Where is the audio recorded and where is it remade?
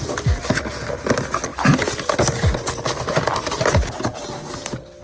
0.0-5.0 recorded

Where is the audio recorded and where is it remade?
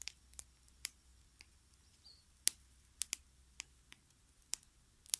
0.0-5.2 recorded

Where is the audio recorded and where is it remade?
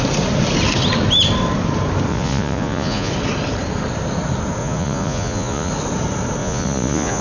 0.0-2.1 recorded; 2.1-3.1 remade; 3.1-4.6 recorded; 4.6-5.7 remade; 5.7-6.4 recorded; 6.4-7.2 remade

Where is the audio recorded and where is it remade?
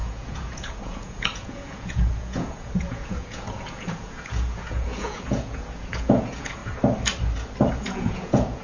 0.0-6.6 remade; 6.6-7.7 recorded; 7.7-8.6 remade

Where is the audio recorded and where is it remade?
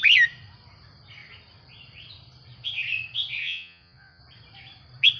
0.0-3.4 recorded; 3.4-4.2 remade; 4.2-5.2 recorded